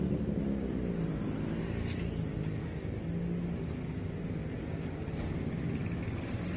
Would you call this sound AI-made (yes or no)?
no